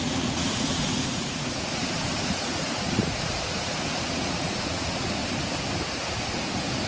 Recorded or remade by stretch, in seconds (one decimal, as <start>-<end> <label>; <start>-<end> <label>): 0.0-5.2 remade; 5.2-6.1 recorded; 6.1-6.9 remade